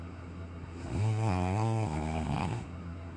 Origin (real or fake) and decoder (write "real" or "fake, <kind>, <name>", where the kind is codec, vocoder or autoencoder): fake, codec, SNAC